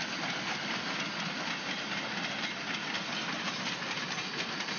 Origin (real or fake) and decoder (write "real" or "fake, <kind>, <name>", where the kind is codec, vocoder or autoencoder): real